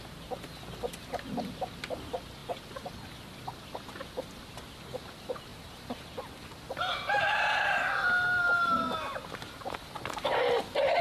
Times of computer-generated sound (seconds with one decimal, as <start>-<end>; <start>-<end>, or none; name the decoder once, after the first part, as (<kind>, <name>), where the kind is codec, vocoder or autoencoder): 5.5-6.2 (vocoder, BigVGAN v2)